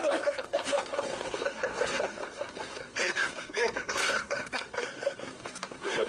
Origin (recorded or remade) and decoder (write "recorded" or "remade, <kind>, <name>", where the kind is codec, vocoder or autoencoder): remade, codec, SNAC